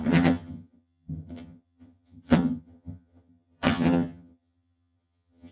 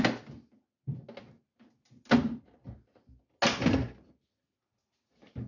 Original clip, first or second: second